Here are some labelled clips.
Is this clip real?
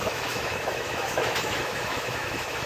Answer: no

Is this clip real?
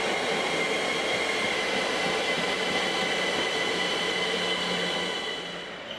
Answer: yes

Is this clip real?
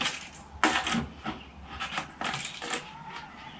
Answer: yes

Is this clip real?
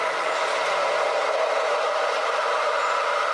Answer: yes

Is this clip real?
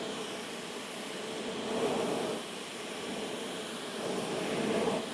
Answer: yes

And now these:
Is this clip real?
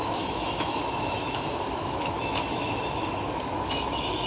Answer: no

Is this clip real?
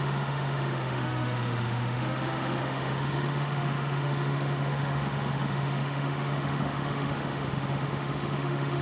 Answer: no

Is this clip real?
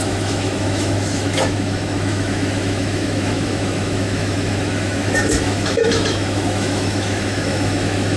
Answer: no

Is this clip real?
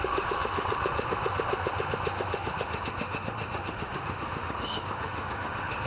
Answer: no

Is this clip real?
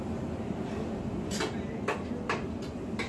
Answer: yes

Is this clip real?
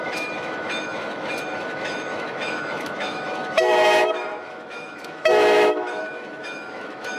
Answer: no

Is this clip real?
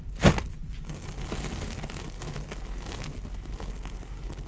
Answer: yes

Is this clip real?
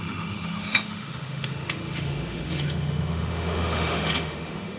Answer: no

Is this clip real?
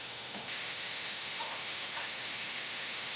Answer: no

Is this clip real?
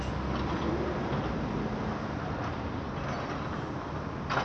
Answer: yes